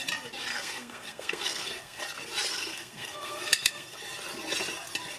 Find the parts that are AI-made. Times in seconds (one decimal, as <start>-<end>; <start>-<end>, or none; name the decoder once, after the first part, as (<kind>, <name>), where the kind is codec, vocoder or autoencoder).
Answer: 0.5-2.0 (codec, SNAC); 2.5-4.0